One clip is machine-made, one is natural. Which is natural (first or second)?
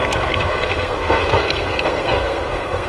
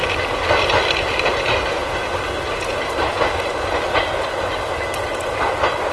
second